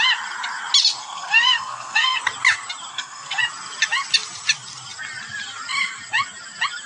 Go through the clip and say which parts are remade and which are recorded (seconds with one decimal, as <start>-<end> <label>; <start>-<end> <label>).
0.0-1.0 recorded; 1.0-2.2 remade; 2.2-2.9 recorded; 2.9-3.4 remade; 3.4-6.9 recorded